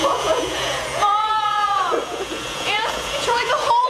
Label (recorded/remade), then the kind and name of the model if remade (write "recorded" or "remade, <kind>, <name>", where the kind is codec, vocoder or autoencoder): remade, vocoder, Vocos